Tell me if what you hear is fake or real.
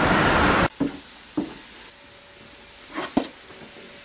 real